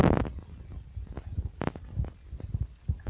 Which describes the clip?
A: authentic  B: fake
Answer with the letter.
A